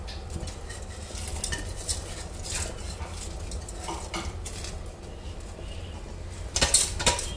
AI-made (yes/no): no